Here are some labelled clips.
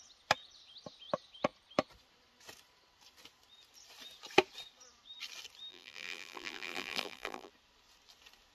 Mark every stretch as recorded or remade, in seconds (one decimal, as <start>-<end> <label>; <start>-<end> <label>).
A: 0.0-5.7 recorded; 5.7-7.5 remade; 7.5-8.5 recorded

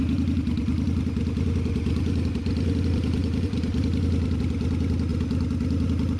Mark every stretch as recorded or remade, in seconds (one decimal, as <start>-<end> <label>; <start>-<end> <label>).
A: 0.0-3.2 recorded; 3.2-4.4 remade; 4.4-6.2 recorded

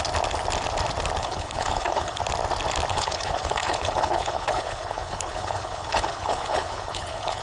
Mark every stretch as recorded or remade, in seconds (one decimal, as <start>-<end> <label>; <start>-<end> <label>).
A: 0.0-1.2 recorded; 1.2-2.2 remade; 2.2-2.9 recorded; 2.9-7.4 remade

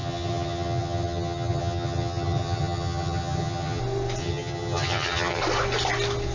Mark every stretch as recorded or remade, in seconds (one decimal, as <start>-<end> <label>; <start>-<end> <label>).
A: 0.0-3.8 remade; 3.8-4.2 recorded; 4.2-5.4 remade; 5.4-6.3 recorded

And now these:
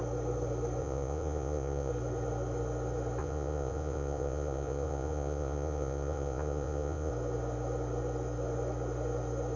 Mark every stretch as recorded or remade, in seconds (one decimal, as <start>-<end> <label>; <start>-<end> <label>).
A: 0.0-0.8 recorded; 0.8-1.9 remade; 1.9-3.2 recorded; 3.2-7.1 remade; 7.1-9.6 recorded